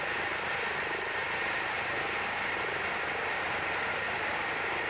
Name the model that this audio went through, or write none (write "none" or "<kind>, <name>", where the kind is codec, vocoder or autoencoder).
none